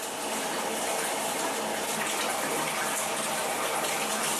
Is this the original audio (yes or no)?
yes